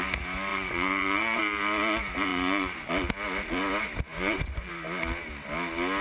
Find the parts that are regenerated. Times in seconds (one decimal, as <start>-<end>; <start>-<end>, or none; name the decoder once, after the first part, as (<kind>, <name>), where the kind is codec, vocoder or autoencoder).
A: 0.5-1.4 (vocoder, Vocos); 2.3-2.9; 4.1-4.7